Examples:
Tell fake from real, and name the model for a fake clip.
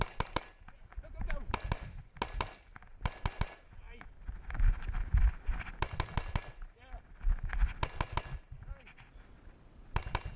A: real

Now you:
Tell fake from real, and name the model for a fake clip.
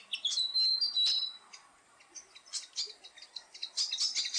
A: real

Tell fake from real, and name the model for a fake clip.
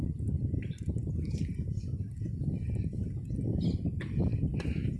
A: real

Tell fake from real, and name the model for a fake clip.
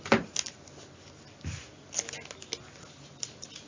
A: real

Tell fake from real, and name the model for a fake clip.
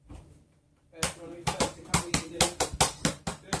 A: real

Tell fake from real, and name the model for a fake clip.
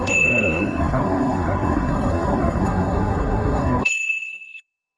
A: fake, codec, SNAC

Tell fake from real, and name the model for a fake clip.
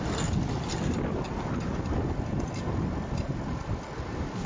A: real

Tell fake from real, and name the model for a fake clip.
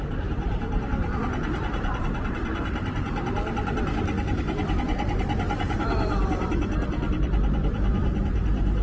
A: fake, vocoder, BigVGAN v2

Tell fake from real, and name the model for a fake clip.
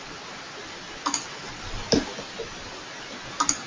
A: real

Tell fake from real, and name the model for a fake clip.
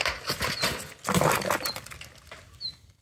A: real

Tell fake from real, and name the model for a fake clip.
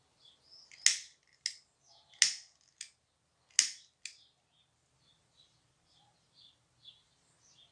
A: real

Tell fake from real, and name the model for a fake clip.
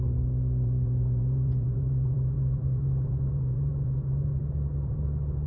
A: fake, vocoder, Vocos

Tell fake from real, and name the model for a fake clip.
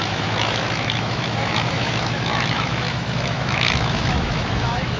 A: fake, autoencoder, DAC-VAE